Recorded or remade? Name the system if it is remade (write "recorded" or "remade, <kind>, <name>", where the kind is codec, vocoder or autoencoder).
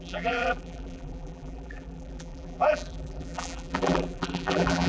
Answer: remade, vocoder, BigVGAN v2